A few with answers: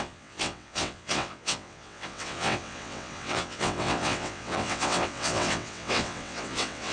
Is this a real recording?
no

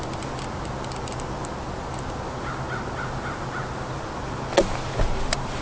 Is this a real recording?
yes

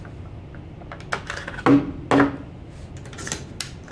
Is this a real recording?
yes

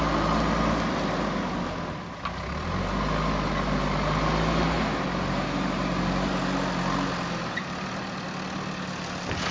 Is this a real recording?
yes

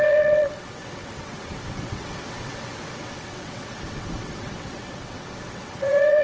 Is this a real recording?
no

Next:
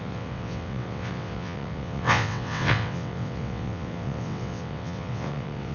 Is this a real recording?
no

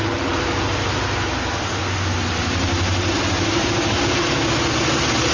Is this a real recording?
yes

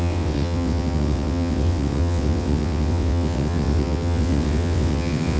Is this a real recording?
no